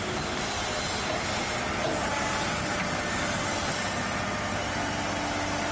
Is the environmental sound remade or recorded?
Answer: recorded